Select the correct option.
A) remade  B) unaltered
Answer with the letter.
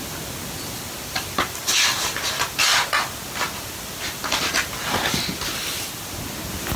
B